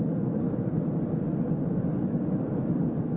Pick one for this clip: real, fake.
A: fake